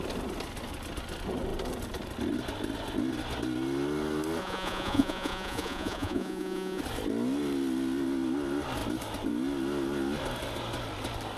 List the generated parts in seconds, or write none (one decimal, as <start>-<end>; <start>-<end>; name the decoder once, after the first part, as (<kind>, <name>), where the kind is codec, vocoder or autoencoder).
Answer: 4.4-6.8 (vocoder, Vocos)